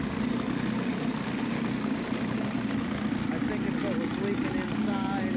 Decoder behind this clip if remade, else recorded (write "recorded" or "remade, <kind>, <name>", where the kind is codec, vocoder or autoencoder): recorded